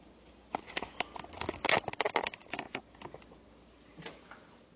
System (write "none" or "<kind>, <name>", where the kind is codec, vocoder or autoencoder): none